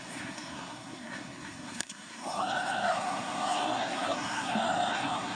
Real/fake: fake